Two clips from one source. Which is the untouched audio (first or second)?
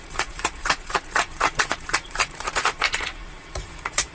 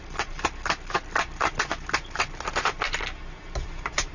second